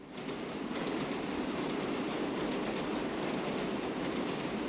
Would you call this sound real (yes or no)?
yes